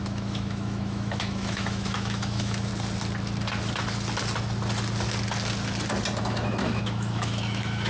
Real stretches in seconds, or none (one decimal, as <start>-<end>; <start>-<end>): 2.7-6.2